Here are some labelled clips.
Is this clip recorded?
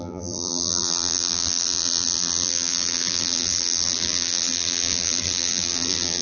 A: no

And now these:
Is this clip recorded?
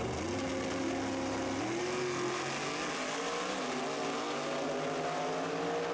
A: yes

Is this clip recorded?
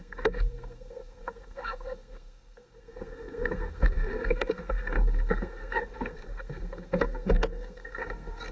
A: no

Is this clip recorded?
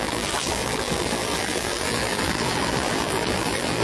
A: no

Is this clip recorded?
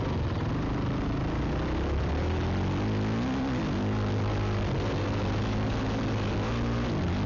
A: yes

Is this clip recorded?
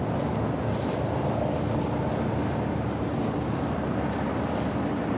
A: yes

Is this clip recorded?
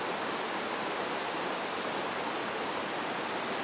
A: yes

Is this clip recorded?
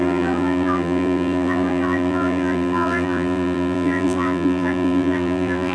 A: no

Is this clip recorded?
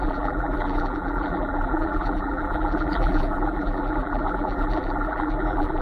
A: no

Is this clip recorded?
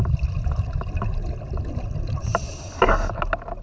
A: yes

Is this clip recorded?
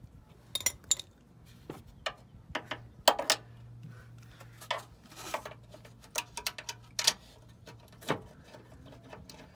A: yes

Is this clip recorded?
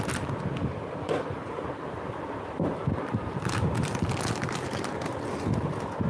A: yes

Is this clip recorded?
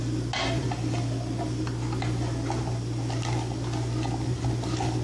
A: yes